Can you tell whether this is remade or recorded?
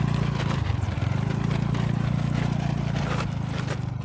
recorded